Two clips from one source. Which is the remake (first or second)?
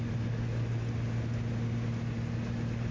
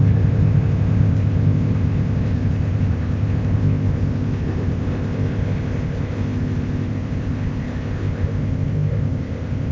second